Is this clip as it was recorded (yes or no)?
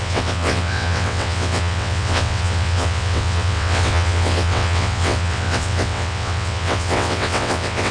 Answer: no